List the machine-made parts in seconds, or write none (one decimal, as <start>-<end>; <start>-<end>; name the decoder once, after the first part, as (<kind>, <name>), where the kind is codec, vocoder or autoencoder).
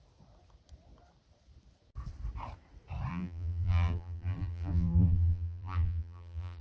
3.1-6.6 (vocoder, BigVGAN v2)